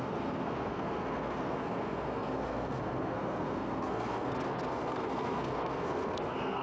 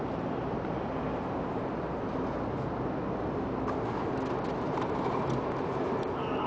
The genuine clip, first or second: second